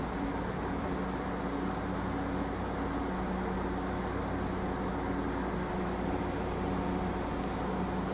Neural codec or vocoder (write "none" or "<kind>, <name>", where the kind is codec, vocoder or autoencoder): none